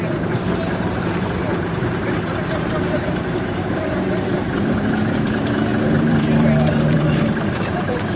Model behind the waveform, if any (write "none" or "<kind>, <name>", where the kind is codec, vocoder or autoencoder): vocoder, BigVGAN v2